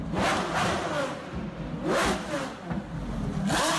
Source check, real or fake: real